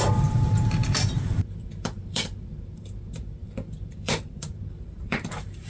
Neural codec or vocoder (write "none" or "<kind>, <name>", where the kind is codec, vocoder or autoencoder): vocoder, BigVGAN v2